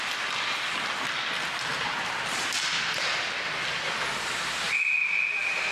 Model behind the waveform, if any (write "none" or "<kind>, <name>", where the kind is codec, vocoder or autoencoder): none